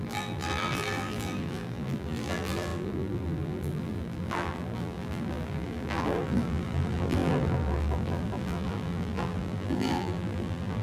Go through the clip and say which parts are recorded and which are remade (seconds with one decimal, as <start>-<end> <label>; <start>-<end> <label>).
0.0-10.8 remade